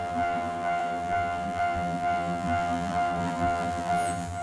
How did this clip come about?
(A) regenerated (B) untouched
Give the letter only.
A